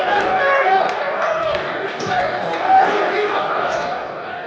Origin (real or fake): fake